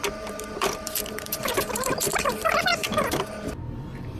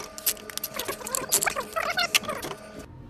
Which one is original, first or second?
second